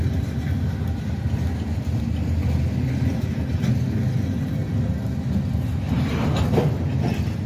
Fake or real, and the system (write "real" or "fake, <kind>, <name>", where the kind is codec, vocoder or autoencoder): real